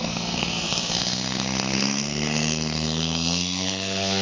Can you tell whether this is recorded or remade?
remade